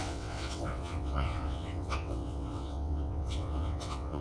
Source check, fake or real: fake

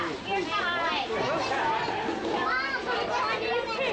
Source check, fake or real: real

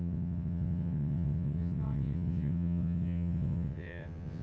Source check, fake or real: fake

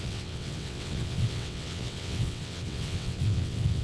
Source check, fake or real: fake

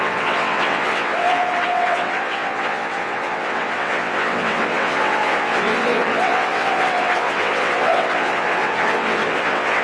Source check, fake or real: fake